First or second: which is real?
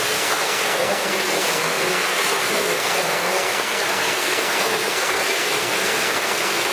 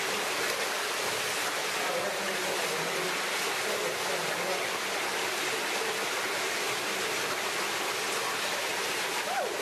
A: second